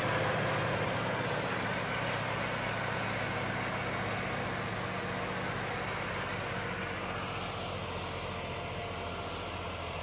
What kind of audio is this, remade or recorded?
recorded